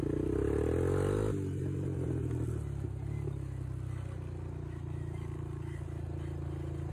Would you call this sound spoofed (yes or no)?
no